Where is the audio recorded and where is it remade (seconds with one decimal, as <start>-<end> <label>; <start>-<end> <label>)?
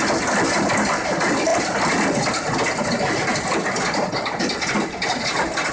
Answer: 0.0-5.7 recorded